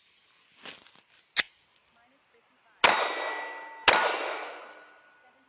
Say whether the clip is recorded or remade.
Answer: recorded